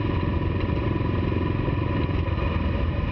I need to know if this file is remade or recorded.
recorded